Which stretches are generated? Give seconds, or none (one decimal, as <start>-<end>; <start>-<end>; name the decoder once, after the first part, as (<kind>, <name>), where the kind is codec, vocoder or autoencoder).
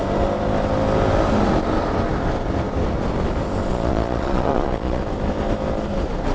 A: 3.7-5.0 (vocoder, Vocos)